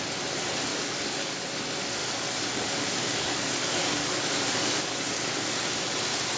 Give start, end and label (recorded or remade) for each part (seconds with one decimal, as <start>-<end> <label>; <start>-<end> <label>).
0.0-0.7 recorded; 0.7-1.4 remade; 1.4-2.0 recorded; 2.0-5.8 remade; 5.8-6.4 recorded